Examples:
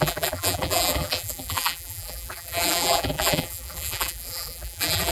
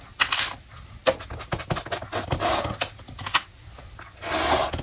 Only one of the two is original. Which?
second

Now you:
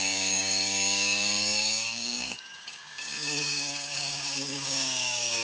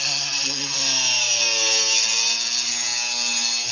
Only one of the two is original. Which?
second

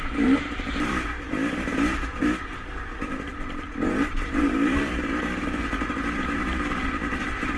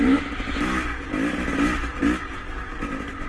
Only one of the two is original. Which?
second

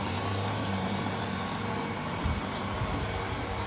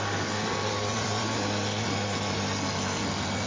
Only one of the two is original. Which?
second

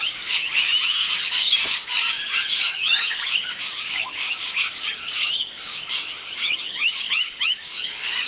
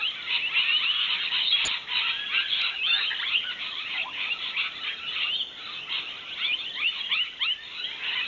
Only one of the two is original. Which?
second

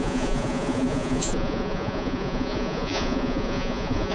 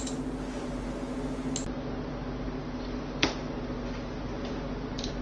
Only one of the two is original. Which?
second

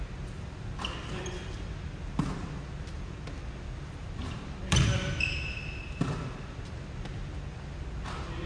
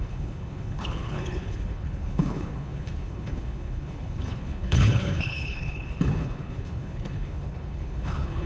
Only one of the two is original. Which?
first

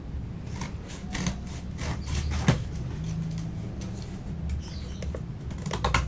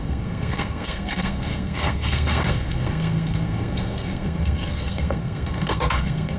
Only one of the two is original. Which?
first